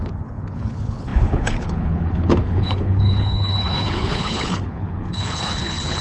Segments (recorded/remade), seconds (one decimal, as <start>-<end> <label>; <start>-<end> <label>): 0.0-6.0 remade